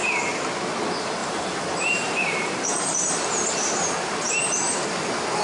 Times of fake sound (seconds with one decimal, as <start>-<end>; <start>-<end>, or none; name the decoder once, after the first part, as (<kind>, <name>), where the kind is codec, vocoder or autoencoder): 1.2-4.4 (vocoder, BigVGAN v2)